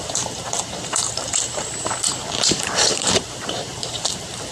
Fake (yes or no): yes